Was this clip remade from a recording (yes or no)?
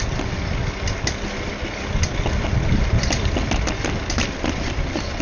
no